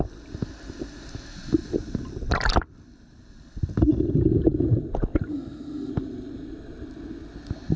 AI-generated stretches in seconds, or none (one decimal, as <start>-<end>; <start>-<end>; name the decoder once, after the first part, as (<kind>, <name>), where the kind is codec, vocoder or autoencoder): 5.3-5.9 (codec, SNAC)